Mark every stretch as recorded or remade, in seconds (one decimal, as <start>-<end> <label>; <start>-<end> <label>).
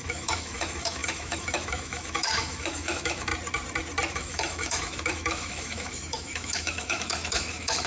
0.0-3.3 remade; 3.3-4.1 recorded; 4.1-7.9 remade